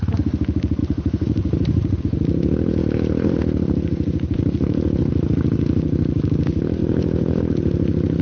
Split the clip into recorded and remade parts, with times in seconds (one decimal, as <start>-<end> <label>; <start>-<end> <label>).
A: 0.0-0.8 recorded; 0.8-2.0 remade; 2.0-2.8 recorded; 2.8-3.4 remade; 3.4-6.8 recorded; 6.8-7.4 remade; 7.4-8.2 recorded